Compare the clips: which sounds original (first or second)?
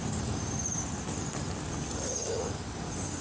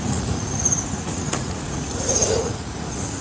first